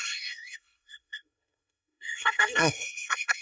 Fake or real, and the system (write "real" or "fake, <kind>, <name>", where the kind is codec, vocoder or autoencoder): fake, codec, SNAC